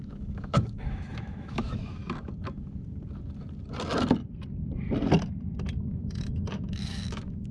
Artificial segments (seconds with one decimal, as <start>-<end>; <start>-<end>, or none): 0.0-2.0; 6.5-7.5